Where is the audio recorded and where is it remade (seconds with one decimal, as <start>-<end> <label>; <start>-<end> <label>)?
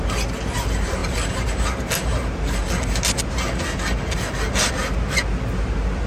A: 0.0-6.1 recorded